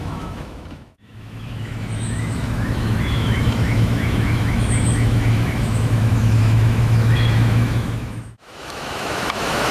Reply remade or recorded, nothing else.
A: remade